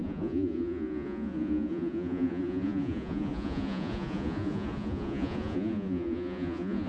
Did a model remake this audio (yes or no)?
yes